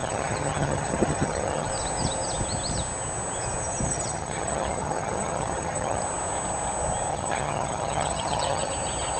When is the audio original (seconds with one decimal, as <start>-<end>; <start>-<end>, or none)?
1.7-3.9; 6.0-7.1; 8.7-9.2